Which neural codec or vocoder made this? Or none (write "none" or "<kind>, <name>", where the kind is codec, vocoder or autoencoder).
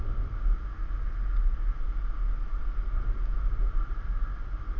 none